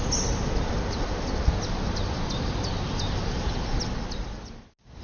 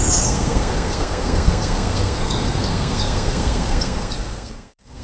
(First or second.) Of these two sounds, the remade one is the second